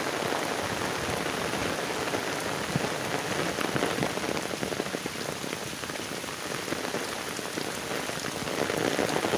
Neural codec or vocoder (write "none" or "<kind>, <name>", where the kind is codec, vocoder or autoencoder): none